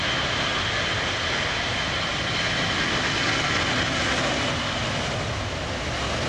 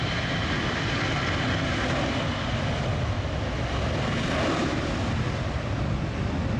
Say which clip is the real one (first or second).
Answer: first